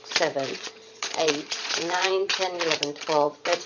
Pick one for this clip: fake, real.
fake